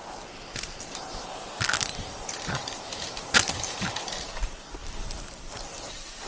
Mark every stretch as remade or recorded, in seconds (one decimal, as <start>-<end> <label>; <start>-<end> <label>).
0.0-6.3 remade